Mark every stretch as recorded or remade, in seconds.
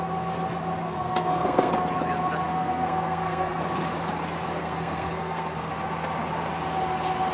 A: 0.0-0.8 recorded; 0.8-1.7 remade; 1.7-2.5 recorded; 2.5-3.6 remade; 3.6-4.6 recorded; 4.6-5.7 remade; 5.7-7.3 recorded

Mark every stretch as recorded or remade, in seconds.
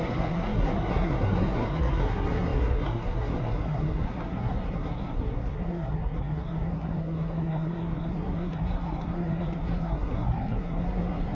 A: 0.0-11.3 remade